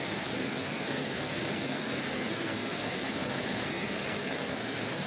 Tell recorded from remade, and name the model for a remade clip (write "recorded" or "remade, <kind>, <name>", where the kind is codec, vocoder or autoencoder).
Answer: remade, codec, SNAC